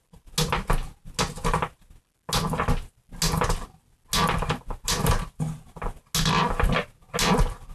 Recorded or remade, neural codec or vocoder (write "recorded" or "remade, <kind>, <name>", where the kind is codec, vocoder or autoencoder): recorded